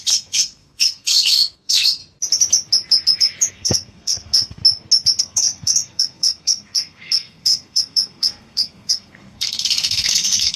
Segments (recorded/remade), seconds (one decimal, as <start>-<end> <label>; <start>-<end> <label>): 0.0-2.0 remade; 2.0-3.5 recorded; 3.5-4.6 remade; 4.6-5.2 recorded; 5.2-10.6 remade